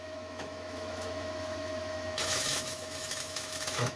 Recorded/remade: remade